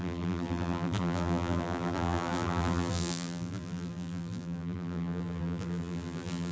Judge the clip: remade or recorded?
remade